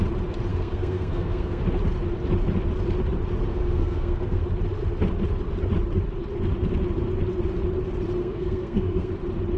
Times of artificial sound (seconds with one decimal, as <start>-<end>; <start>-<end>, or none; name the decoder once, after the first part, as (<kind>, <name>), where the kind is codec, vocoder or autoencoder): 0.5-1.6 (codec, SNAC); 3.5-4.4; 8.2-9.1